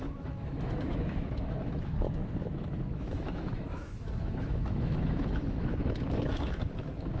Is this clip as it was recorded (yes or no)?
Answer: no